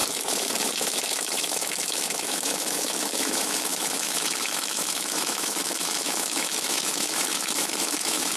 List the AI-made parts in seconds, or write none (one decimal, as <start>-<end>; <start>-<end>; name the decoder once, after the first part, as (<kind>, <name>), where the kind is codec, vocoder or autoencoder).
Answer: 0.0-8.4 (autoencoder, DAC-VAE)